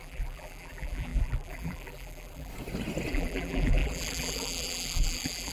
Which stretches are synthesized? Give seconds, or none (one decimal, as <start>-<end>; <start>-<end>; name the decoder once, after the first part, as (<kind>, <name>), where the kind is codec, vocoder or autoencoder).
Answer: 0.0-2.5 (vocoder, BigVGAN v2); 3.1-5.5